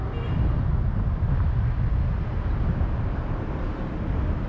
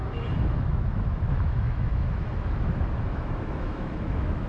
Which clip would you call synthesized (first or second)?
second